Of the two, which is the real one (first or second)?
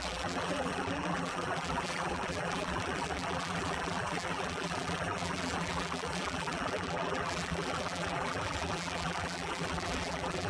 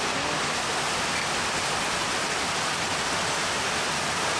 second